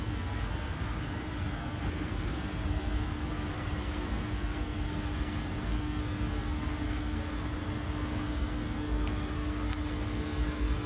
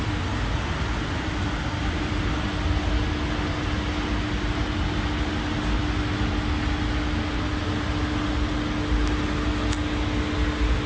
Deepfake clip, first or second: first